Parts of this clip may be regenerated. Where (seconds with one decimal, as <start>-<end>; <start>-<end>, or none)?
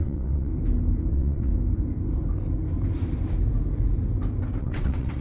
0.0-0.5; 1.1-1.5; 4.6-5.2